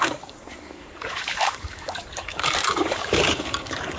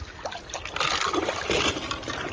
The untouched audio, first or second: second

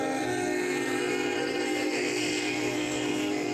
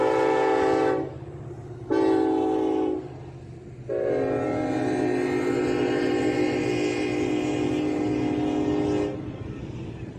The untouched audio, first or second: second